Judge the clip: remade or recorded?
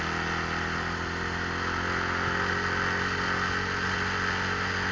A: recorded